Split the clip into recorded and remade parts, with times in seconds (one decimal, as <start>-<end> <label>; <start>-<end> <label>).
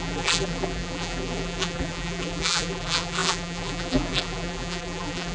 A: 0.0-5.3 remade